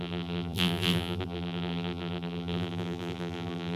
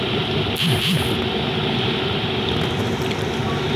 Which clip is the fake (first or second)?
first